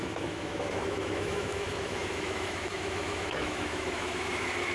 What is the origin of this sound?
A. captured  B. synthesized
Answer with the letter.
B